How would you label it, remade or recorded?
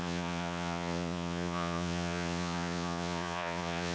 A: remade